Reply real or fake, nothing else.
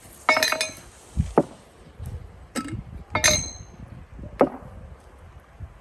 real